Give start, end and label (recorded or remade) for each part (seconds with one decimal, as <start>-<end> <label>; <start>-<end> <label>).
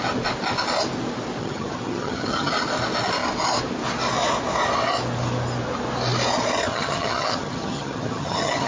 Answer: 0.0-1.4 recorded; 1.4-2.5 remade; 2.5-6.7 recorded; 6.7-8.7 remade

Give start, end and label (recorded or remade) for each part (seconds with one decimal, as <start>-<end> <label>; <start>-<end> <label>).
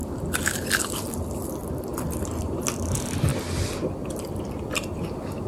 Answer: 0.0-3.3 remade; 3.3-4.1 recorded; 4.1-5.5 remade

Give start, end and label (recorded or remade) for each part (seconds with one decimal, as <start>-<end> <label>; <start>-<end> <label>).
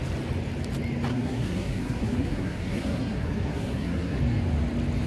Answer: 0.0-1.1 recorded; 1.1-4.2 remade; 4.2-5.1 recorded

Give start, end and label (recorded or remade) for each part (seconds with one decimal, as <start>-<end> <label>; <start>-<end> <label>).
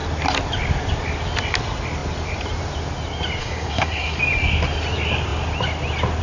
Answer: 0.0-3.4 recorded; 3.4-4.2 remade; 4.2-6.2 recorded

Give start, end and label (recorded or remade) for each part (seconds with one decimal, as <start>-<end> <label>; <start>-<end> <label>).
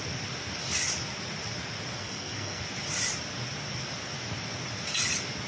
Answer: 0.0-2.0 recorded; 2.0-2.6 remade; 2.6-5.5 recorded